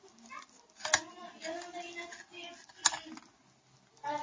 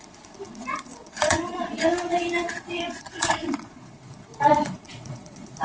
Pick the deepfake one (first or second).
second